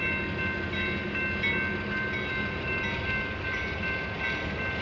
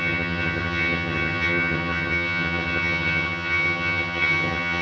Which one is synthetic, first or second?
second